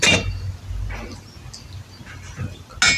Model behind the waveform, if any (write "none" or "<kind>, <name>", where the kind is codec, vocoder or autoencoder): none